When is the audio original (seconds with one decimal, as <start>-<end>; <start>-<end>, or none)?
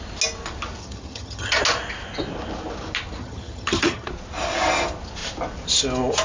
0.0-0.8; 1.6-3.2; 4.1-6.2